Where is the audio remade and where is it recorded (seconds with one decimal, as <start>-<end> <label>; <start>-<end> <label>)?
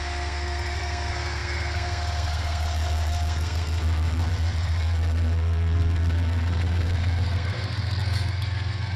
0.0-9.0 remade